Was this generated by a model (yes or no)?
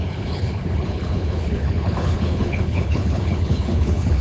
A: yes